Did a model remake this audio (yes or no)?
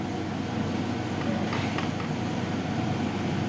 no